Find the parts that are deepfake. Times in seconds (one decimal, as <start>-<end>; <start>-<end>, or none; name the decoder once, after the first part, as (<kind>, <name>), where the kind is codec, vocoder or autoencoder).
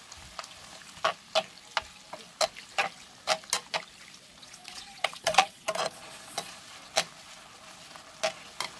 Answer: 4.4-6.6 (vocoder, Vocos)